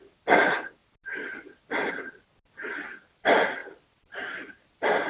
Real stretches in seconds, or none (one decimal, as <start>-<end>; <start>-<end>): 0.0-3.6